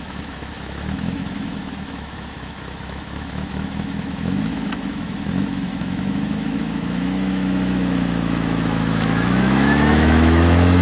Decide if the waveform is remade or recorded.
remade